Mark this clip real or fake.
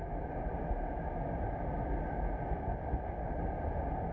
real